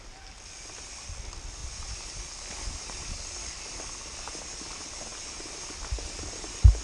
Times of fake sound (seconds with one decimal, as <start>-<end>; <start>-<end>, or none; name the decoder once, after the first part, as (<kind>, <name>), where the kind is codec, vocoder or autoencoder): none